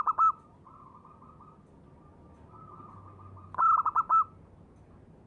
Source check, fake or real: real